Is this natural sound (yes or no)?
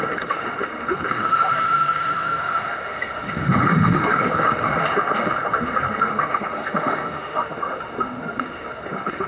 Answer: no